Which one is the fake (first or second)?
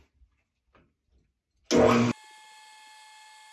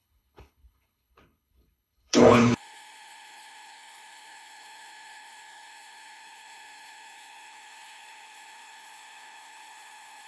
second